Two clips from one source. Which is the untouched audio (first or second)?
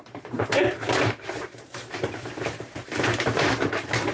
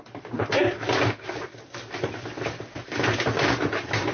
second